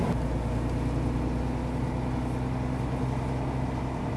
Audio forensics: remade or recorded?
recorded